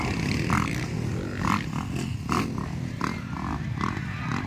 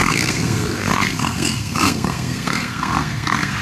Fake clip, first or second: second